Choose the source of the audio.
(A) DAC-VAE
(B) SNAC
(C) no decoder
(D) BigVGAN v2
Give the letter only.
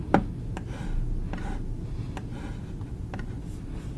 C